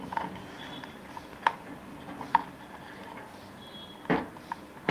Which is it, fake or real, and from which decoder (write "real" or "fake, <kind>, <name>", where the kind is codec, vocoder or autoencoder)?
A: real